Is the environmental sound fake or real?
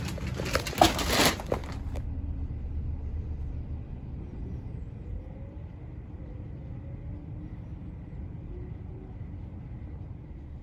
real